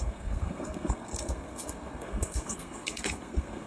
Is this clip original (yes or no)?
no